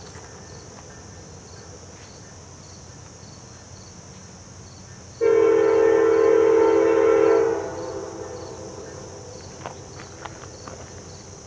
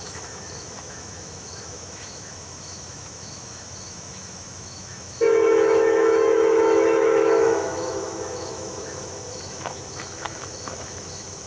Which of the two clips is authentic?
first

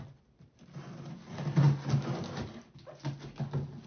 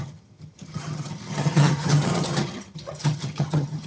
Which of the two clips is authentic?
first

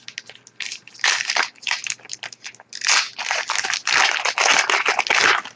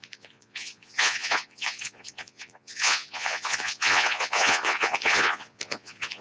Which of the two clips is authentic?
first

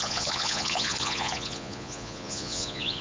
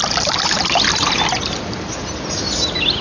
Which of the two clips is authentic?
second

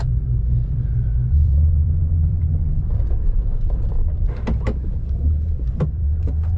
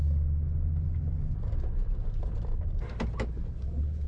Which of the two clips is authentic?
second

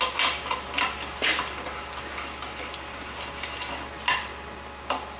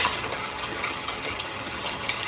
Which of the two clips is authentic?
first